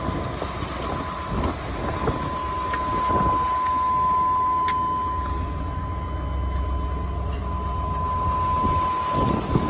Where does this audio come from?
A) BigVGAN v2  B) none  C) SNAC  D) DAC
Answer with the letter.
B